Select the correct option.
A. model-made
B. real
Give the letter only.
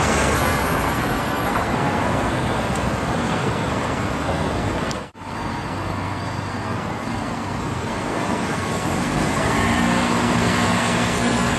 A